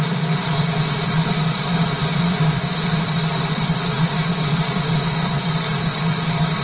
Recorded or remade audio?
remade